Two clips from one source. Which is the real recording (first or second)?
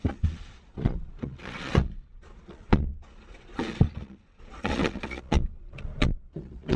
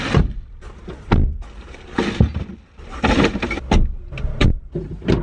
second